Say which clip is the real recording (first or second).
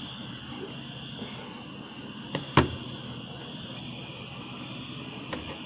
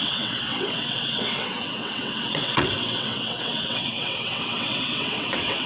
first